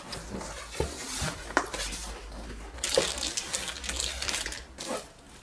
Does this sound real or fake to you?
real